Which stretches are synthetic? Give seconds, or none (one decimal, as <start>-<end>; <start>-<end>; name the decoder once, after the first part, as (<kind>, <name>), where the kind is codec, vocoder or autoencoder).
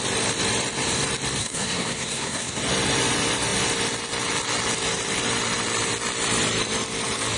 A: 1.4-2.6 (codec, SNAC)